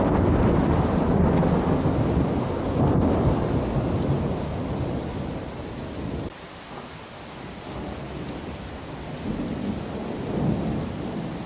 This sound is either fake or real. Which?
real